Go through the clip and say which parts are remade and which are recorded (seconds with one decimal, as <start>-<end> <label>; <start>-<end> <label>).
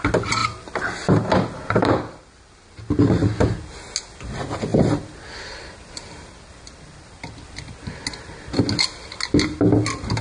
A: 0.0-0.4 recorded; 0.4-2.8 remade; 2.8-4.7 recorded; 4.7-7.1 remade; 7.1-10.2 recorded